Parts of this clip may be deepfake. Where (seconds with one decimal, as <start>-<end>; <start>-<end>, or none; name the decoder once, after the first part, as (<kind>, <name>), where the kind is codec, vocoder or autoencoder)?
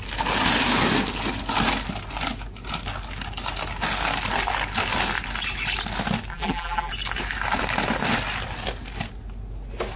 6.3-6.9 (vocoder, BigVGAN v2)